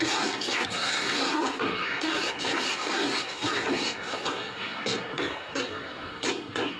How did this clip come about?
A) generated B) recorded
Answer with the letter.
A